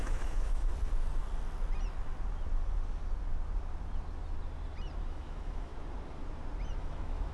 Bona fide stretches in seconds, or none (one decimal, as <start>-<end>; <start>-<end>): 0.7-5.1; 5.7-6.8